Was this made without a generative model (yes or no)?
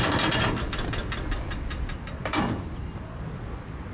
yes